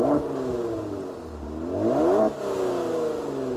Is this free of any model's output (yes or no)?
yes